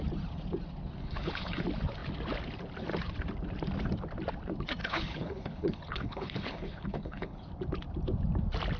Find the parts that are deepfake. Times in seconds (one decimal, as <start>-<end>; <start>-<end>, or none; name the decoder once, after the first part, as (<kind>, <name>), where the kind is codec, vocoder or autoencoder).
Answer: 1.0-1.6 (codec, HILCodec); 4.8-7.5